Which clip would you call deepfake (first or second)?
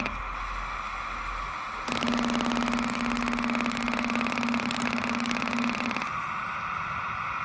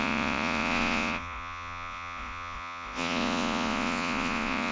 second